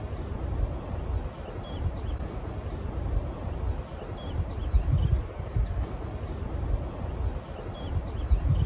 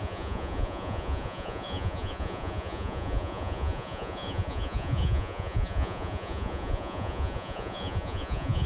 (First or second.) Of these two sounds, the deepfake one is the second